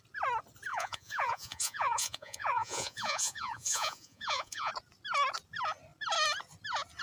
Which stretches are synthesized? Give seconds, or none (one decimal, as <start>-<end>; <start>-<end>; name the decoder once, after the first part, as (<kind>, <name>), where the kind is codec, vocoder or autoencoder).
0.7-4.7 (vocoder, Vocos)